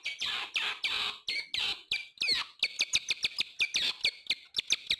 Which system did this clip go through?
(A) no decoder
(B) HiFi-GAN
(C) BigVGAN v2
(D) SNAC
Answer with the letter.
A